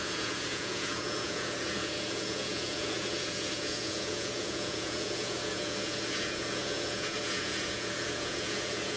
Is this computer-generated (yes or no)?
yes